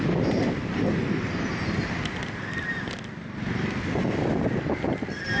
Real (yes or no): yes